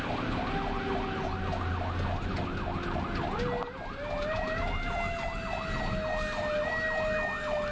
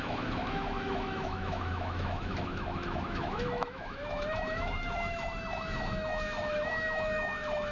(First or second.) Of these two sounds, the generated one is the second